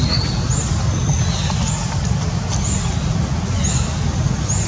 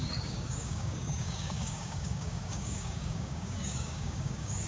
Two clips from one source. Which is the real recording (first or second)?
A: first